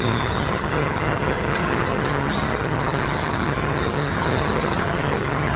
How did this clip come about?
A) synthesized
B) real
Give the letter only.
A